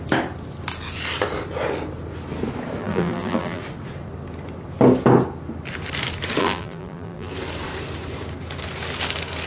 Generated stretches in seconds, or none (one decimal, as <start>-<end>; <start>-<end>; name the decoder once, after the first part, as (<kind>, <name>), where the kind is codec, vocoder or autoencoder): 2.8-3.6 (vocoder, BigVGAN v2); 6.4-7.3